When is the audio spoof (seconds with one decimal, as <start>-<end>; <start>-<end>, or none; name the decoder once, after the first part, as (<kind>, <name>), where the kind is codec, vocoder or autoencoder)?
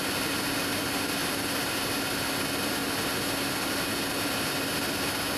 none